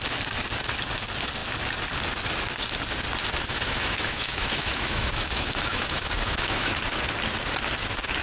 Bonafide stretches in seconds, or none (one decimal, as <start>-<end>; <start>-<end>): 0.0-3.5; 6.8-8.2